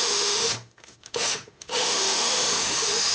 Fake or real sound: fake